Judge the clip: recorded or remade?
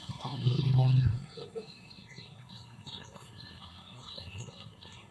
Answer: remade